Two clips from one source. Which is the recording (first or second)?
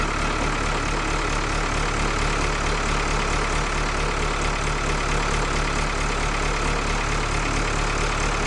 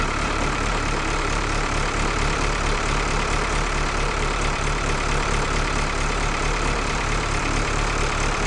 first